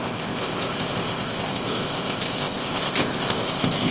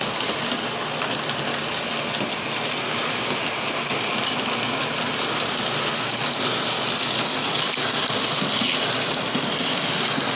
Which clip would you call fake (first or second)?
first